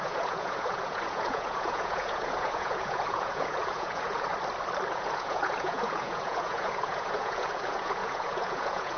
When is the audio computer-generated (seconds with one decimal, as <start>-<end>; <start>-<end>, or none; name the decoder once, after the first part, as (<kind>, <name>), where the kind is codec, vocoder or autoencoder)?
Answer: 0.0-4.3 (vocoder, Vocos); 4.9-9.0